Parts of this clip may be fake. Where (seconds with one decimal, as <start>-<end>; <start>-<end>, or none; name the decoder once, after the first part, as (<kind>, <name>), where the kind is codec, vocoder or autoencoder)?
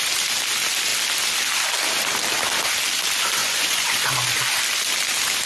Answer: 3.4-4.1 (vocoder, Vocos)